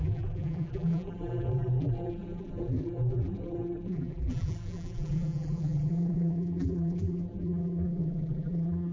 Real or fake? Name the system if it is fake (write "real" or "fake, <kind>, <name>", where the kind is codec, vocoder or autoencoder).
fake, vocoder, BigVGAN v2